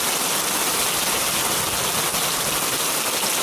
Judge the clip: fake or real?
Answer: real